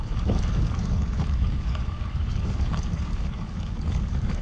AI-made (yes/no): yes